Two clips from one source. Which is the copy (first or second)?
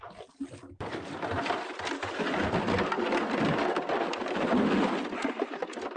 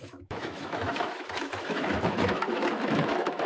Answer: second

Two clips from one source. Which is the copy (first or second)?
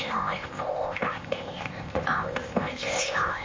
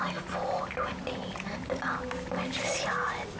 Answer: first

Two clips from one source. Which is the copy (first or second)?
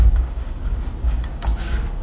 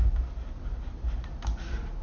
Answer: first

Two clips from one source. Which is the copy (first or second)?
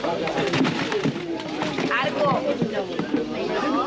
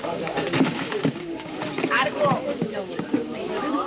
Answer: second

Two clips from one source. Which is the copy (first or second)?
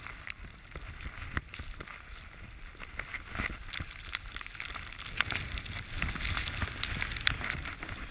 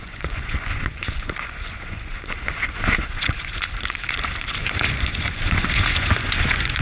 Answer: second